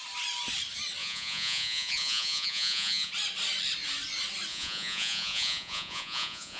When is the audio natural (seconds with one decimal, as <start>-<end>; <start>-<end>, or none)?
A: 0.0-1.0; 3.1-4.5